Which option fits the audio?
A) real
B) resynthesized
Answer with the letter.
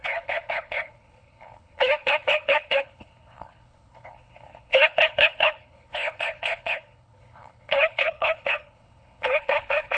B